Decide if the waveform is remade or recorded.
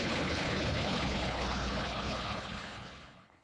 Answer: remade